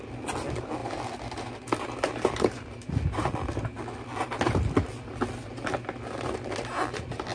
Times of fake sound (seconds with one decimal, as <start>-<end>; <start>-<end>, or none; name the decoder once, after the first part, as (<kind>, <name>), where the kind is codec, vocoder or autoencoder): none